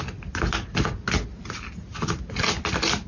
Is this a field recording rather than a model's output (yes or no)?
yes